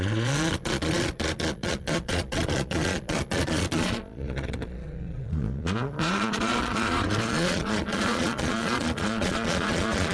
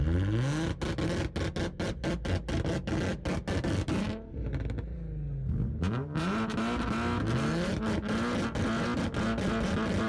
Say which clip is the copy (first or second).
first